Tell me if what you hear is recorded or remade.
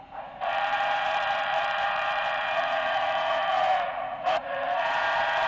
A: remade